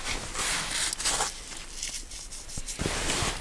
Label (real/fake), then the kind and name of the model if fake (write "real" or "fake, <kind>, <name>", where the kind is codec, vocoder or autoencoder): real